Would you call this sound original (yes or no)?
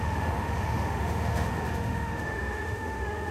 no